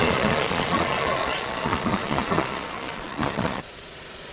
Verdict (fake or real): fake